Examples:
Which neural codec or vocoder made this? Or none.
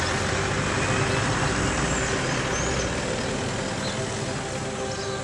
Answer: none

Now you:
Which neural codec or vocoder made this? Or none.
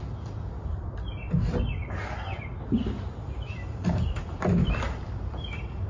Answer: vocoder, BigVGAN v2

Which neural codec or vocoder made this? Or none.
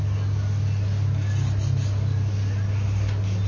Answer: none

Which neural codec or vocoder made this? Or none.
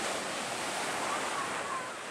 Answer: vocoder, BigVGAN v2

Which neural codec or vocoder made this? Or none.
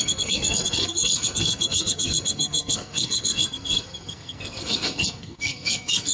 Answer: codec, SNAC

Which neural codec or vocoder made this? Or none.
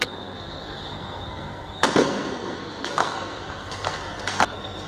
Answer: codec, SNAC